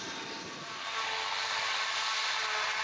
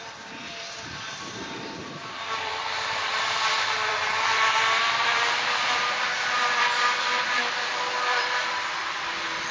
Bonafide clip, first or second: first